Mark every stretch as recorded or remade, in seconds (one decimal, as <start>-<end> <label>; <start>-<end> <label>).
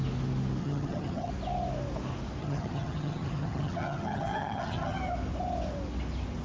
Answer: 0.0-0.6 recorded; 0.6-1.3 remade; 1.3-2.4 recorded; 2.4-5.0 remade; 5.0-6.4 recorded